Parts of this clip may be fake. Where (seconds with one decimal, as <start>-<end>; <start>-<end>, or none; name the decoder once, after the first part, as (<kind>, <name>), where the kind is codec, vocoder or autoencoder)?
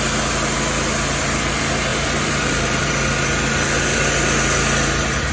1.9-2.9 (vocoder, BigVGAN v2)